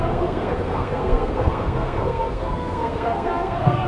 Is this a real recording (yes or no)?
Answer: no